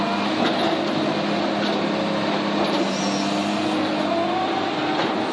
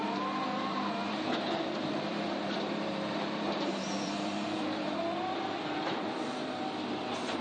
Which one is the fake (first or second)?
second